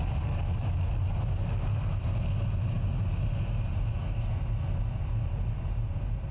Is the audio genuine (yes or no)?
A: yes